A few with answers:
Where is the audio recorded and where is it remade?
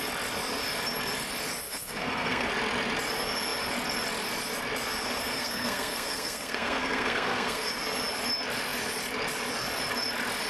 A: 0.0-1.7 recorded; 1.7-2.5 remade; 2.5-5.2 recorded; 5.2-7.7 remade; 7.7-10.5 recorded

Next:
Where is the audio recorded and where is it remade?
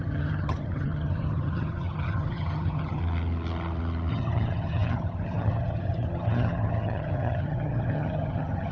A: 0.0-3.0 remade; 3.0-4.1 recorded; 4.1-8.7 remade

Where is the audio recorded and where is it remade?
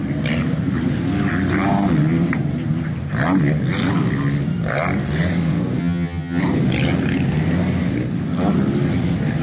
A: 0.0-5.8 recorded; 5.8-6.4 remade; 6.4-9.4 recorded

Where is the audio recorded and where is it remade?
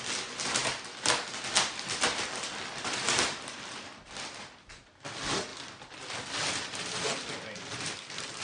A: 0.0-8.4 recorded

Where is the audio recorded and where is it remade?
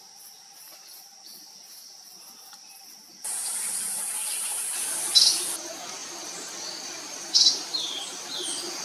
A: 0.0-1.3 recorded; 1.3-4.4 remade; 4.4-6.0 recorded; 6.0-8.8 remade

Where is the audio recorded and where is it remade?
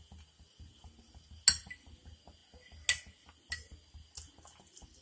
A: 0.0-5.0 recorded